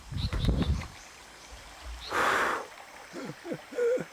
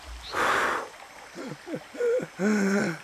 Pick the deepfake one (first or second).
first